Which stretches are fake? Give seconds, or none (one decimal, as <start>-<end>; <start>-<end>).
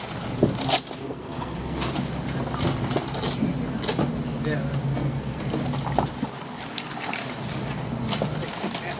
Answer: 1.0-1.9; 4.9-5.4